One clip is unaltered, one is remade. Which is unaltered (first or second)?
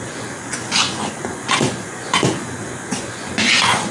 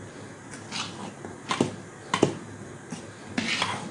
second